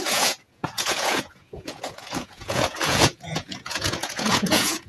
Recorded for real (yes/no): no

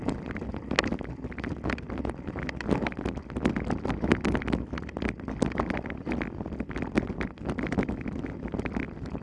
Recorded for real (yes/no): yes